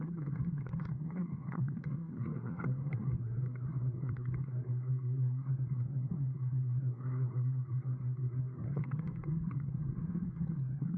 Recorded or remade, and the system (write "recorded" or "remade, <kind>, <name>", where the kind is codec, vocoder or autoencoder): remade, codec, SNAC